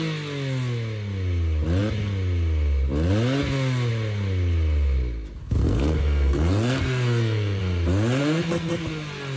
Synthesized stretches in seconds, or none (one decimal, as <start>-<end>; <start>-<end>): 5.4-7.6; 8.2-8.8

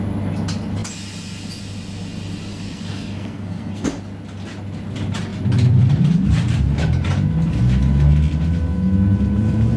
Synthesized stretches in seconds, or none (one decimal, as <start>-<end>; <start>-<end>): 2.5-4.0

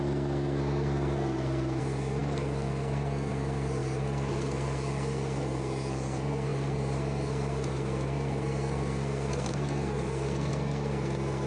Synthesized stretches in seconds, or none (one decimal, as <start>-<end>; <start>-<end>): 0.0-11.5

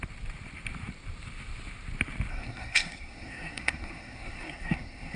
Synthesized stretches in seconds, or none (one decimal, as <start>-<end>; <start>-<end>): 2.3-5.2

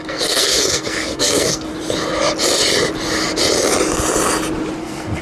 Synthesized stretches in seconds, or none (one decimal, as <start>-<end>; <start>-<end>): 0.0-1.7; 4.8-5.2

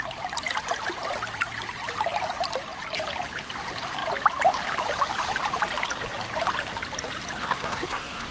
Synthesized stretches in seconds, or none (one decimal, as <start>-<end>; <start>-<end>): 7.4-8.3

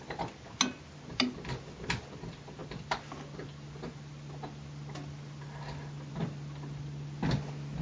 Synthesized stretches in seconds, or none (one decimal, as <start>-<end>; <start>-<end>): none